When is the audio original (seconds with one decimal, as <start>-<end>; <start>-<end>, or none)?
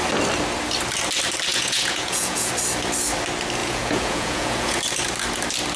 0.0-1.5; 2.5-3.6; 4.8-5.8